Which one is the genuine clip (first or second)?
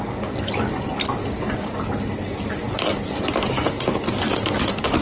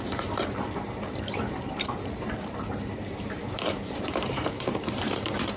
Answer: first